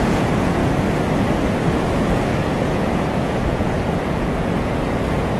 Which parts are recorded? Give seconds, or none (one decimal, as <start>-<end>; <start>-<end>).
0.6-1.7